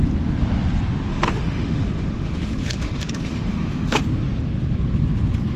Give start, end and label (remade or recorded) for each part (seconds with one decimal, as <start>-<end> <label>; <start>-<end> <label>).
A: 0.0-1.1 recorded; 1.1-4.0 remade; 4.0-5.6 recorded